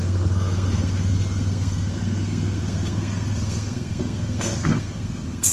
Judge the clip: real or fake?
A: fake